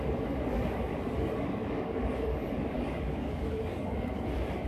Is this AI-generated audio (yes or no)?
yes